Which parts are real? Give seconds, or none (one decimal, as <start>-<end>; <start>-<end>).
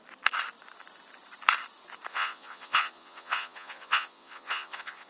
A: 0.0-2.1